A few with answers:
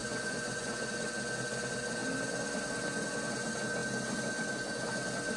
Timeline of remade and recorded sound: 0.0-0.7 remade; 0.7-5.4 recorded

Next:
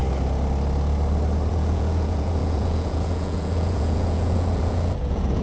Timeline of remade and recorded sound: 0.0-1.5 recorded; 1.5-5.4 remade

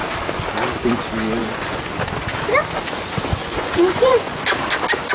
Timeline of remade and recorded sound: 0.0-1.4 recorded; 1.4-1.9 remade; 1.9-3.4 recorded; 3.4-4.4 remade; 4.4-5.1 recorded

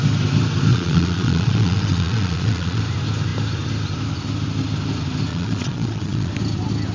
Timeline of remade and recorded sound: 0.0-0.7 recorded; 0.7-2.8 remade; 2.8-5.3 recorded; 5.3-6.3 remade; 6.3-6.9 recorded

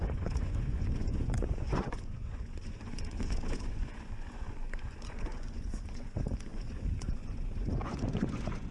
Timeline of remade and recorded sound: 0.0-8.7 remade